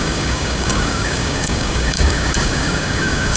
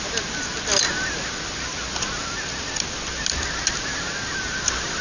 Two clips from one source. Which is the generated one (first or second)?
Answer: first